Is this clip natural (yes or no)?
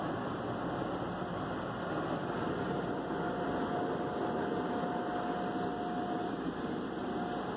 yes